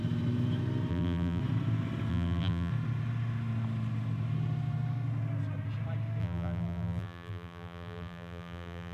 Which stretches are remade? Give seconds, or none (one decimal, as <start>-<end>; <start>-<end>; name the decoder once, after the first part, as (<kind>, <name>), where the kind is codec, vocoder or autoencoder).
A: 0.9-1.4 (vocoder, BigVGAN v2); 2.1-2.7; 6.2-8.9